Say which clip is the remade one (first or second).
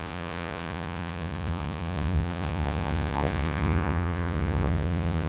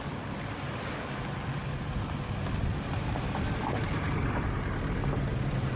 first